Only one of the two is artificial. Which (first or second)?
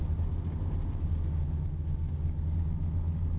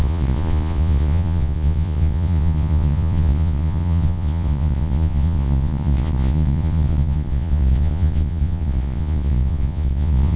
second